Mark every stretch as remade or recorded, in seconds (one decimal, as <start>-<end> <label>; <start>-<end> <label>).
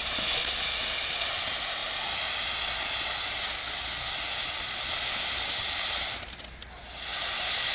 0.0-7.7 recorded